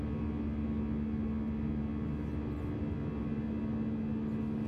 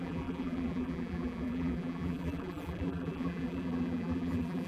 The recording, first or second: first